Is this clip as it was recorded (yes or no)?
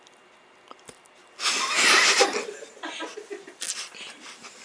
yes